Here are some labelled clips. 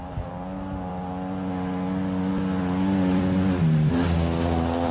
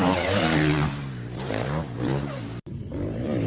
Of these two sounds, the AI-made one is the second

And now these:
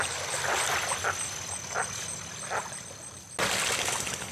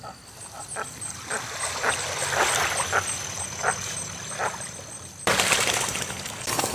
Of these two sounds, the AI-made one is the second